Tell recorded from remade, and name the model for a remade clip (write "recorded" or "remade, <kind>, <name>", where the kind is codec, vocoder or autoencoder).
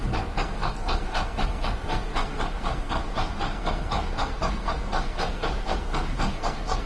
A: remade, codec, SNAC